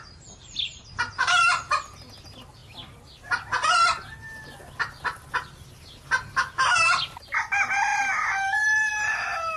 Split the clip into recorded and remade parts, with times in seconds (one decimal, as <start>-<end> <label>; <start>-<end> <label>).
0.0-9.6 recorded